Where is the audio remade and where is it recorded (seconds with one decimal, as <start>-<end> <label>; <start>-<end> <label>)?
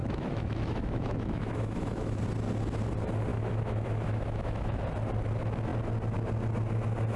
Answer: 0.0-2.2 remade; 2.2-3.3 recorded; 3.3-4.8 remade; 4.8-7.2 recorded